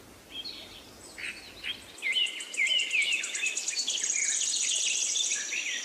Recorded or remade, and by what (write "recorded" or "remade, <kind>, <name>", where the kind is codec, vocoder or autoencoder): recorded